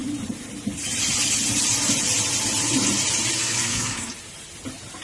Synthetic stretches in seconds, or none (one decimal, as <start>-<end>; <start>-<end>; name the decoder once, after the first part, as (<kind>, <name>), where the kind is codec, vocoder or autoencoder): 3.4-4.1 (codec, SNAC)